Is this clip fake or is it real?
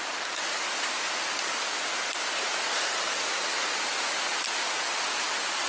real